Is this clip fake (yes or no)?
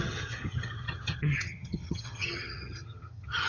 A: yes